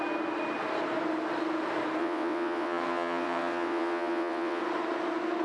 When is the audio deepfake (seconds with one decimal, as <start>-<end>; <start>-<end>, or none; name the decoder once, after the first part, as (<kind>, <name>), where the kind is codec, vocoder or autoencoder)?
2.0-4.6 (vocoder, WaveNeXt)